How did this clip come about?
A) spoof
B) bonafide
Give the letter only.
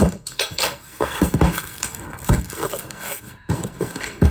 A